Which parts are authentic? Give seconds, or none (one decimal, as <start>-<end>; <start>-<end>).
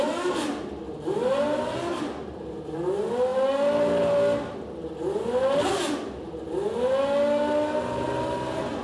0.0-8.8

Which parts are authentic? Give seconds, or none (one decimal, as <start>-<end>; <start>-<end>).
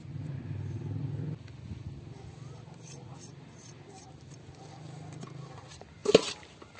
0.0-6.0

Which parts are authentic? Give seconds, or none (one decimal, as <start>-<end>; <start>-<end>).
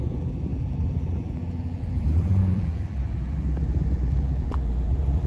none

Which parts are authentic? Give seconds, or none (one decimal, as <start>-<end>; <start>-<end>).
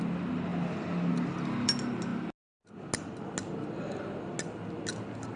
0.0-5.4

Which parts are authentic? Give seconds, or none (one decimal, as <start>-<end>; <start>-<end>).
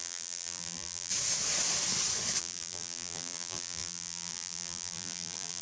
1.1-2.4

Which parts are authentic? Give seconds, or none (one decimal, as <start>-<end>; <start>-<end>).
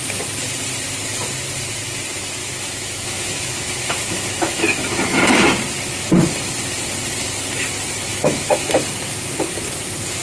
0.0-2.4; 5.2-8.1; 8.7-10.2